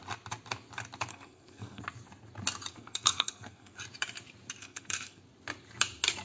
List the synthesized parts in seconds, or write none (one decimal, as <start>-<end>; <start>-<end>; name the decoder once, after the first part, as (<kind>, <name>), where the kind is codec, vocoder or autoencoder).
1.1-1.8 (codec, SNAC); 2.7-3.8; 4.6-5.2